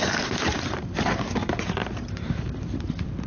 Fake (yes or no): yes